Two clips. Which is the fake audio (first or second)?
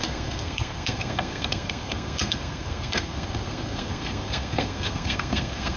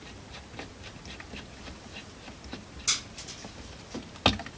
first